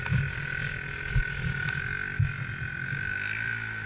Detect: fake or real real